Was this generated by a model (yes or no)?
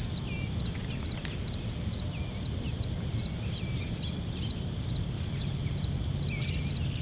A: no